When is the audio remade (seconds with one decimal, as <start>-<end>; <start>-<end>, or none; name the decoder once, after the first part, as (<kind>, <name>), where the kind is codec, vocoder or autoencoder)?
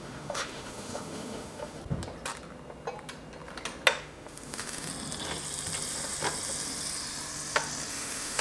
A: 0.0-1.8 (autoencoder, DAC-VAE); 4.0-4.9; 7.9-8.4